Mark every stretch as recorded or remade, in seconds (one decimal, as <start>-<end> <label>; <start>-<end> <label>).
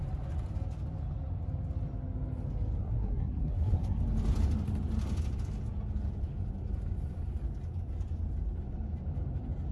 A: 0.0-2.8 recorded; 2.8-4.0 remade; 4.0-9.7 recorded